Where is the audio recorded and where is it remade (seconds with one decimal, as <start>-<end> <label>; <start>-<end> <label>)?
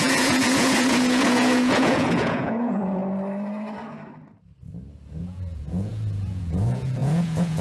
0.0-3.0 remade; 3.0-5.2 recorded; 5.2-7.6 remade